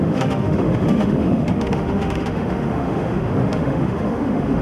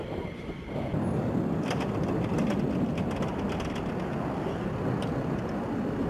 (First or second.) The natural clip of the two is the second